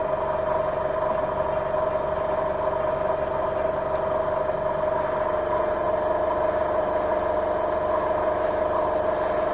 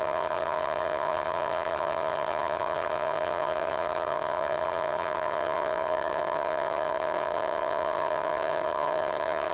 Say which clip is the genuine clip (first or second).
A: first